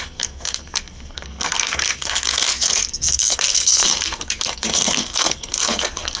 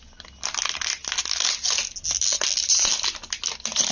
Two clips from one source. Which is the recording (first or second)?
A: second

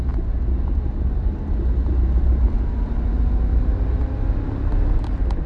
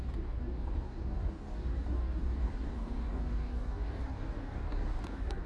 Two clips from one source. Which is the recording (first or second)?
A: first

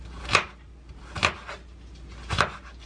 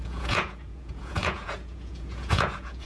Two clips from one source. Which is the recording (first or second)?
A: first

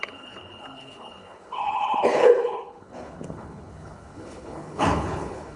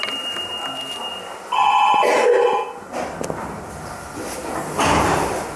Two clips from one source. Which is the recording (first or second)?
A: second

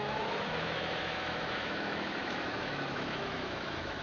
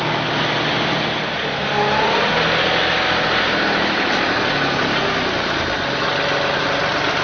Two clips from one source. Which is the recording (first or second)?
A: second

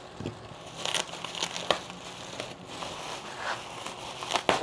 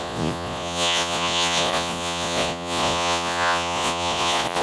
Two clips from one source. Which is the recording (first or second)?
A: first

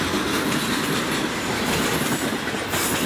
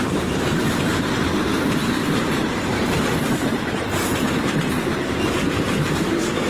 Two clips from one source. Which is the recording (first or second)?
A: first